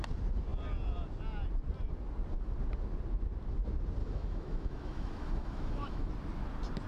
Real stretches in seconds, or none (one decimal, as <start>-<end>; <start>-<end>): 0.0-4.0; 6.1-6.9

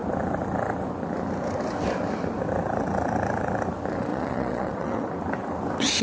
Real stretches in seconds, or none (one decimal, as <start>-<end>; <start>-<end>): 0.0-4.1; 5.1-6.0

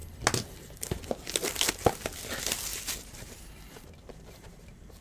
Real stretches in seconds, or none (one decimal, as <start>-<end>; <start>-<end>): 0.0-2.7

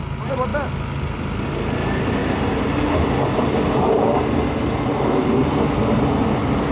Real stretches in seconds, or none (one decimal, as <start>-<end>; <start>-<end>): 0.0-6.7

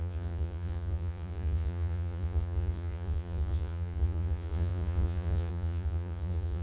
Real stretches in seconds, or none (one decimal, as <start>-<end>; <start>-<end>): none

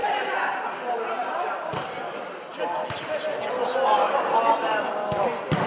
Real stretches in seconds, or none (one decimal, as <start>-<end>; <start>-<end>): 0.0-5.7

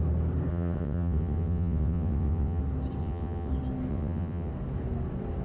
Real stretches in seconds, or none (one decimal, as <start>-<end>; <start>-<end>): 0.0-0.5; 2.6-3.0; 3.5-3.9; 4.5-5.4

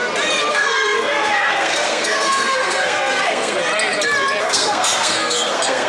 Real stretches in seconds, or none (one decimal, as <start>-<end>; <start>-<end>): 0.0-0.5; 3.7-4.4